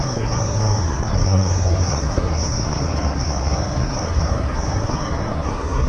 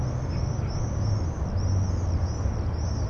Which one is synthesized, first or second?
first